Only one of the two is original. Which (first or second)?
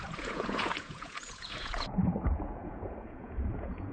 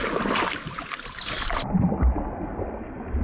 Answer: second